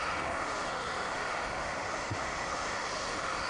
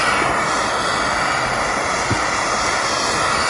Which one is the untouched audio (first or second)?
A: second